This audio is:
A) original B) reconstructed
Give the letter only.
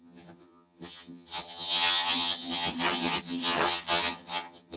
B